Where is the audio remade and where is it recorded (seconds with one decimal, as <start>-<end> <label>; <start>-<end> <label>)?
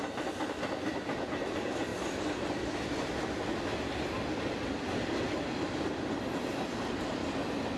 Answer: 0.0-7.8 recorded